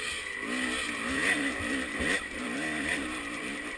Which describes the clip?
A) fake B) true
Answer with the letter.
B